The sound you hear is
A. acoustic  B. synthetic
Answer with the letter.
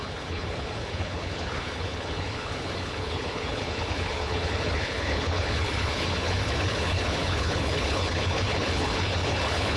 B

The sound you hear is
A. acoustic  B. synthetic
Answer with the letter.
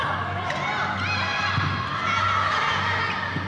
A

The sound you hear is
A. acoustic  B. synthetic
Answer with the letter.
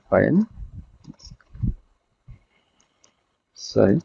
B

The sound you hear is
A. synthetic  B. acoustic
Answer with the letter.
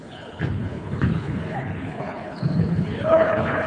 A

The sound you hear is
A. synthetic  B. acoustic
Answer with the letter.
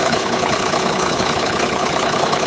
A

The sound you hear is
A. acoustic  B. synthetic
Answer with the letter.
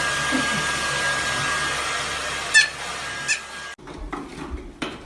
A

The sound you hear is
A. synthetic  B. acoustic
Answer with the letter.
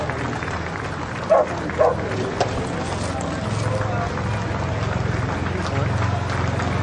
B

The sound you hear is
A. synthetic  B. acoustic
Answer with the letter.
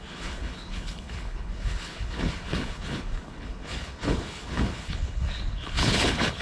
A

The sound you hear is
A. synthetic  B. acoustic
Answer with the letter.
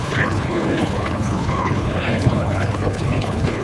A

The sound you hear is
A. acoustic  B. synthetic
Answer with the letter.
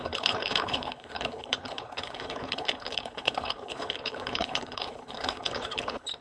B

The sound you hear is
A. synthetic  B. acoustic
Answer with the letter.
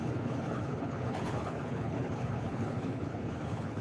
A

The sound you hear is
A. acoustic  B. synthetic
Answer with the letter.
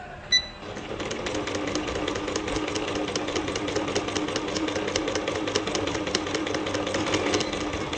A